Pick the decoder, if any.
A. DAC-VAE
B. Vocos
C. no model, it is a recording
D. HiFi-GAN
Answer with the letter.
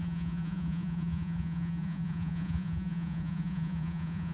B